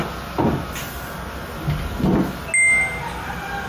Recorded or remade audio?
recorded